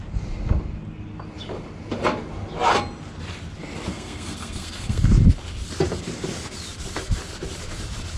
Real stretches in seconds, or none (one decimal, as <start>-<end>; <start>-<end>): 0.0-3.9; 5.1-8.2